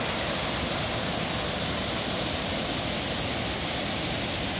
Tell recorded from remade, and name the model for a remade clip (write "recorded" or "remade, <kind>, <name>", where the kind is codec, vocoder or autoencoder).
recorded